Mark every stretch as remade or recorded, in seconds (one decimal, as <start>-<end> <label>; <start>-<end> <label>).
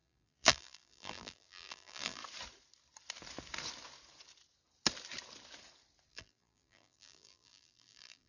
0.0-2.2 remade; 2.2-6.1 recorded; 6.1-8.3 remade